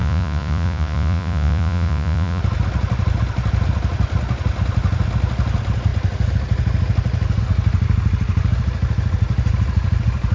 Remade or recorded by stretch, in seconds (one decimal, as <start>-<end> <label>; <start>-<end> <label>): 0.0-2.4 remade; 2.4-10.3 recorded